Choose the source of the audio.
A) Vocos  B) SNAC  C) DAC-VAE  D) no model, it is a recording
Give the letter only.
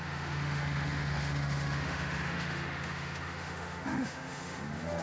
C